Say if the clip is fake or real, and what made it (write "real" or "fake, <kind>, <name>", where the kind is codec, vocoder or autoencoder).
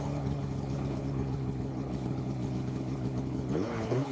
fake, codec, HILCodec